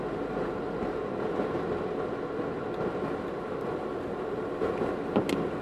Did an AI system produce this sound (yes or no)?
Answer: no